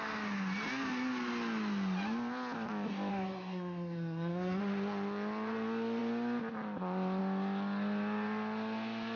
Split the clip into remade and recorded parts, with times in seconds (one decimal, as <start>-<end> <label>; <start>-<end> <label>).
0.0-3.1 recorded; 3.1-4.6 remade; 4.6-9.2 recorded